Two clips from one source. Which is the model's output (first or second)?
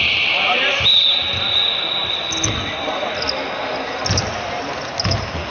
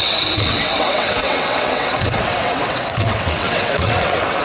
second